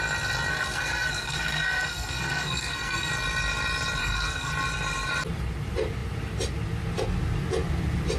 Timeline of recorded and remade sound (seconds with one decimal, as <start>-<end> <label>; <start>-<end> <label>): 0.0-0.5 recorded; 0.5-3.1 remade; 3.1-4.0 recorded; 4.0-4.5 remade; 4.5-8.2 recorded